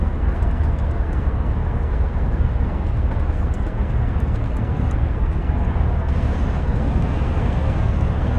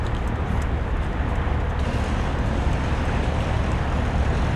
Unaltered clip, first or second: second